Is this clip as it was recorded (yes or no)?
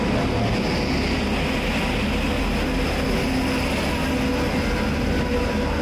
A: yes